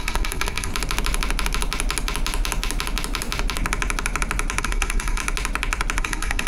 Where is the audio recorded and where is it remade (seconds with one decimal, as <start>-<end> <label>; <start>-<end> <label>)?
0.0-0.7 remade; 0.7-4.6 recorded; 4.6-5.2 remade; 5.2-6.0 recorded; 6.0-6.5 remade